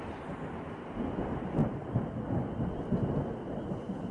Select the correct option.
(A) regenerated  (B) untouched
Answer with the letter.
B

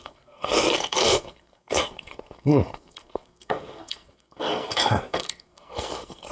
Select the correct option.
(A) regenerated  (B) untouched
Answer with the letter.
A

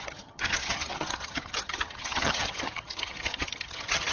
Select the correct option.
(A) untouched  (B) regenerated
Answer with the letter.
B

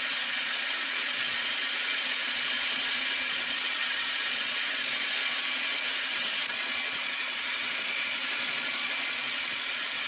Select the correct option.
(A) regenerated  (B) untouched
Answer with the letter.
A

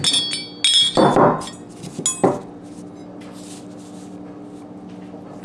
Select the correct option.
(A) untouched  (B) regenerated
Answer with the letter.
A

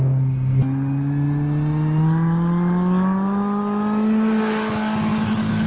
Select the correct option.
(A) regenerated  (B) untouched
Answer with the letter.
B